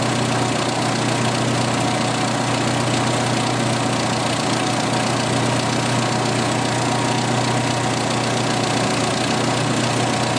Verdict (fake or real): real